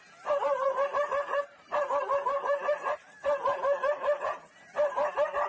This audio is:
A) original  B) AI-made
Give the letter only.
A